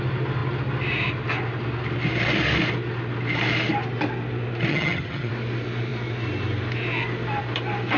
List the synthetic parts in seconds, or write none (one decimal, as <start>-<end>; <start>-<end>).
4.7-5.3